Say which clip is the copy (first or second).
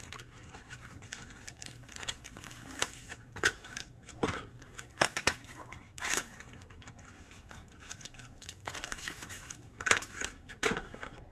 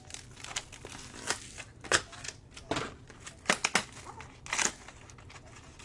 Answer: first